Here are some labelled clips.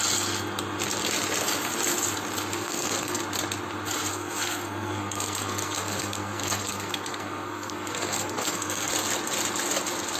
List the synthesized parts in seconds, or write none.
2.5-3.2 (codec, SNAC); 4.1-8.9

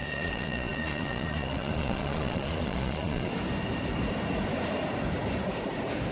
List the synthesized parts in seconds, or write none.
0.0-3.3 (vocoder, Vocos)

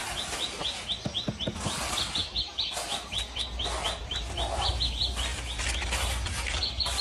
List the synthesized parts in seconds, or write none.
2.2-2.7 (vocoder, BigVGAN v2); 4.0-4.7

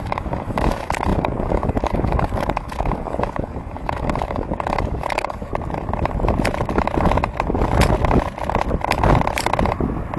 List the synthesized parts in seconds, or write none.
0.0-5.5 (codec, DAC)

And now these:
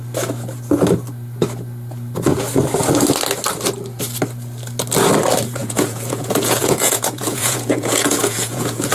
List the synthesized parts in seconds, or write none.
5.6-8.9 (vocoder, Vocos)